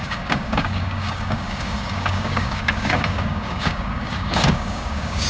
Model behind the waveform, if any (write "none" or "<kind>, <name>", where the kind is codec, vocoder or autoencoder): codec, DAC